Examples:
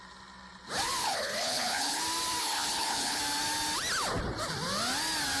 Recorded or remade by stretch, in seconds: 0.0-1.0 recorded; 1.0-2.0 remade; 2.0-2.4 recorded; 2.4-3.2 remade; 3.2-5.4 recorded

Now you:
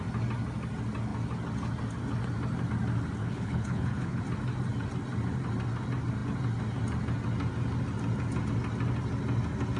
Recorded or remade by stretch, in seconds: 0.0-3.2 recorded; 3.2-4.2 remade; 4.2-9.8 recorded